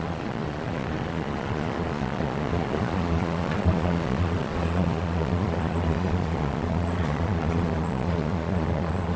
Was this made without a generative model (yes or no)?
no